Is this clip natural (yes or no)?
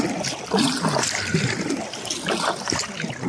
yes